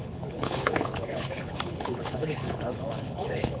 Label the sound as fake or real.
fake